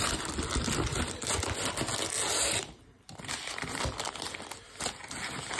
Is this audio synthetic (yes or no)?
no